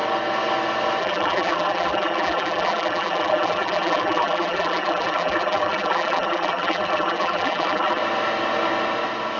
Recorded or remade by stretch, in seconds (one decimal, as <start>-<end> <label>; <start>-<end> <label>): 0.0-1.0 recorded; 1.0-8.0 remade; 8.0-9.4 recorded